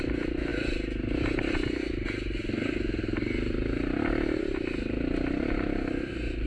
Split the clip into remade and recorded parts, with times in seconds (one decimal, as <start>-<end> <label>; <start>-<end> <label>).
0.0-6.5 recorded